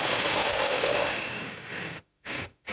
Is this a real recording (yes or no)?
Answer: no